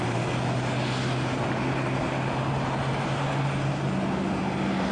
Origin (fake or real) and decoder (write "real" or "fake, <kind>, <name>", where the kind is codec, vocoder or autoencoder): real